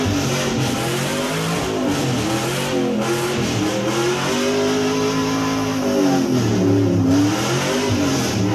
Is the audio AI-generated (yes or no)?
no